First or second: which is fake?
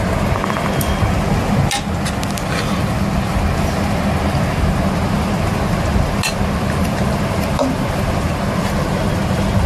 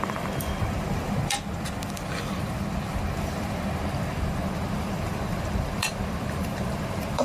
second